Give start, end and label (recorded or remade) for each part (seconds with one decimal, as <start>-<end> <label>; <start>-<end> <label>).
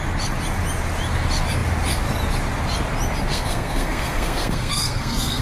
0.0-3.3 recorded; 3.3-5.4 remade